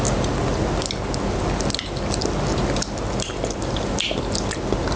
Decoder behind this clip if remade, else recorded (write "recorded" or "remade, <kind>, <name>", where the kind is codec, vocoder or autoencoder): recorded